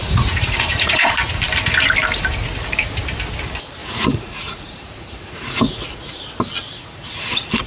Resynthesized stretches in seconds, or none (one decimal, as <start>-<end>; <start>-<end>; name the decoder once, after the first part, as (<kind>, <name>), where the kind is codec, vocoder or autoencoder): 0.0-1.1 (vocoder, Vocos); 3.8-6.1; 6.7-7.7